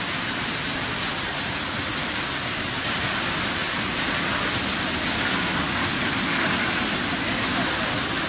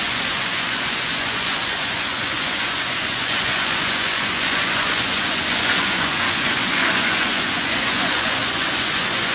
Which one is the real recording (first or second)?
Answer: first